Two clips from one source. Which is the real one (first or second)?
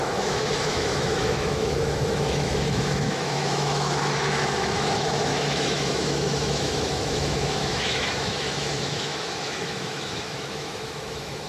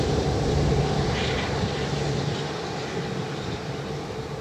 second